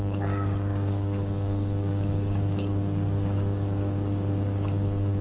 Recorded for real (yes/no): no